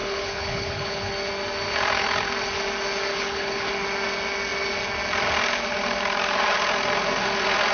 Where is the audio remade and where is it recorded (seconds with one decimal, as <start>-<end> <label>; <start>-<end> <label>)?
0.0-1.1 remade; 1.1-3.1 recorded; 3.1-3.7 remade; 3.7-7.7 recorded